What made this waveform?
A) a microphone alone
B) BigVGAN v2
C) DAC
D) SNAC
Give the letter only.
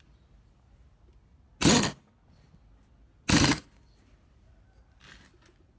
A